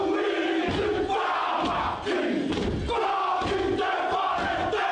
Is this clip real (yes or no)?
yes